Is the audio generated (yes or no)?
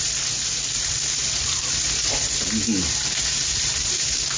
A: no